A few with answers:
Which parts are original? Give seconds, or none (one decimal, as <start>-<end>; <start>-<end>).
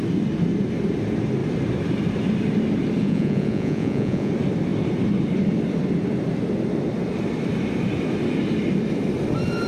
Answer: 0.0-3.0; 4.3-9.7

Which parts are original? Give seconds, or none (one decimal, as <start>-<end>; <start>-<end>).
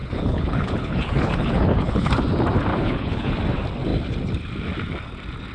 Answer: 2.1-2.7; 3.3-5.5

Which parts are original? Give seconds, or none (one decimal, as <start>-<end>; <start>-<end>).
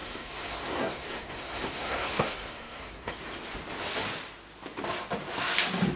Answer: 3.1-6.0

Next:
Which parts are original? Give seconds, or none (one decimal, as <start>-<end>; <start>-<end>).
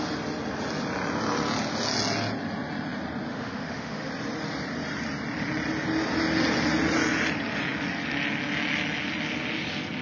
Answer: 0.0-3.3; 4.1-10.0